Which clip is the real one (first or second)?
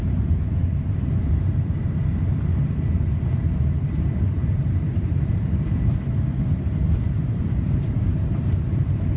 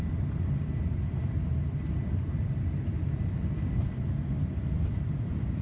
second